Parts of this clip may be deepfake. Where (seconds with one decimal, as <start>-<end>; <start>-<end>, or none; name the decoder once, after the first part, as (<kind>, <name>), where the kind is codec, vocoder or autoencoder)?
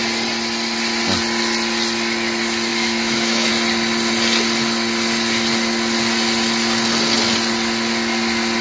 2.7-3.5 (autoencoder, DAC-VAE)